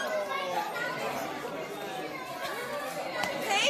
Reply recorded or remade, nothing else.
recorded